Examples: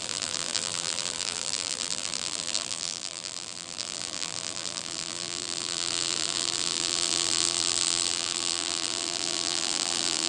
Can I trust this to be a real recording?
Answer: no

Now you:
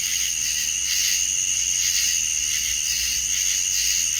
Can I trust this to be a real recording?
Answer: yes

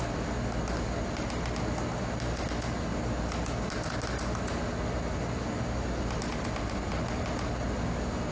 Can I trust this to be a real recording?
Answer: yes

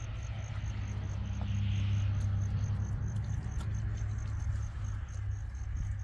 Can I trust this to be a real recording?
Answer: yes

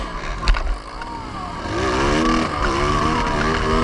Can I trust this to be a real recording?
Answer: yes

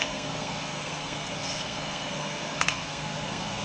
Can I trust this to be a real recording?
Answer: no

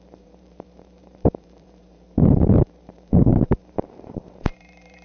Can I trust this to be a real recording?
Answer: no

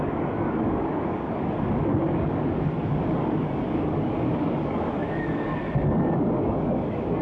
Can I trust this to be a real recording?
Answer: no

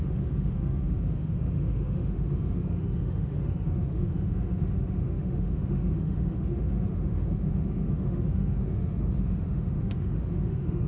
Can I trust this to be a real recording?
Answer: no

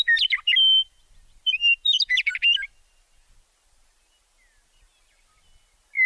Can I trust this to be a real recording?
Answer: yes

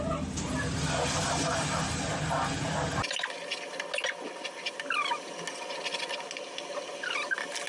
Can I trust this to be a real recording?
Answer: yes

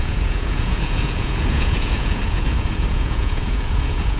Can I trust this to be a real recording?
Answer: no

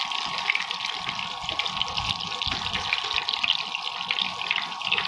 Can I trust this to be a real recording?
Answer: yes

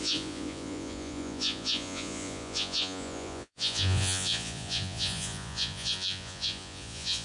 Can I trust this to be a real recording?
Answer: no